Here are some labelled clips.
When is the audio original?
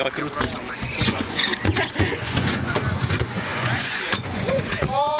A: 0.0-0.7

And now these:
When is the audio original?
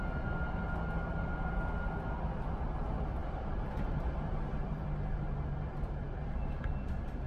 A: 0.0-3.2; 6.7-7.3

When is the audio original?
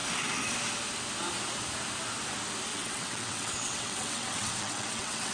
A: 0.0-2.7